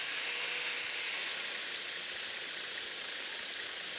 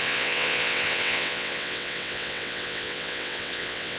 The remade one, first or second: second